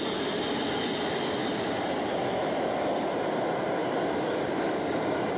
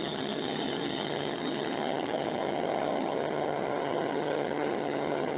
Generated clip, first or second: second